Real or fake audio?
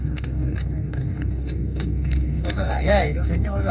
fake